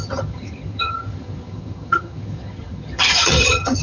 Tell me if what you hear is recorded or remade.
remade